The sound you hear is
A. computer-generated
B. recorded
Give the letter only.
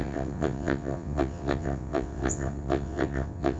A